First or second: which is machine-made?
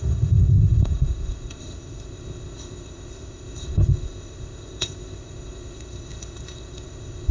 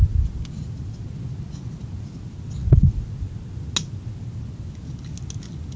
first